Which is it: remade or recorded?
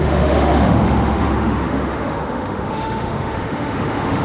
remade